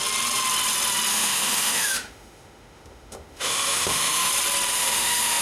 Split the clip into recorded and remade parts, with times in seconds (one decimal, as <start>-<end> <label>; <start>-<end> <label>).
0.0-1.1 recorded; 1.1-4.3 remade; 4.3-4.7 recorded; 4.7-5.4 remade